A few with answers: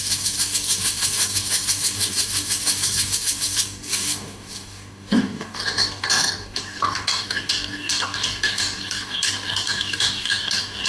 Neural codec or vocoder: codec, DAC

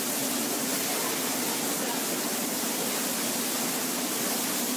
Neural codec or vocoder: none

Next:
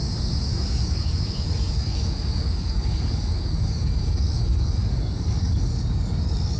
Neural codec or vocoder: codec, DAC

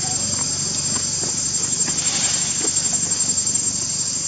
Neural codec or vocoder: none